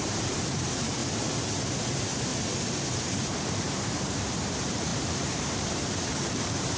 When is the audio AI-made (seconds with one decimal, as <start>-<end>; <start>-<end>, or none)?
0.0-1.0; 1.6-2.3; 3.5-6.8